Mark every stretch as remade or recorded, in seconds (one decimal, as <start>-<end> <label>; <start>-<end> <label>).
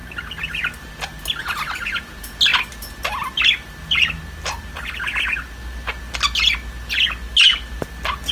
0.0-8.3 recorded